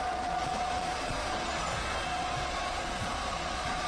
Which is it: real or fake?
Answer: fake